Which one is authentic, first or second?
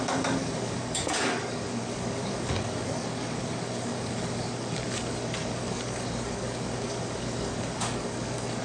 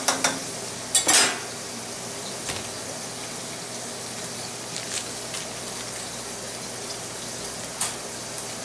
second